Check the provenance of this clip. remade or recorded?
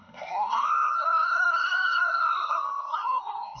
remade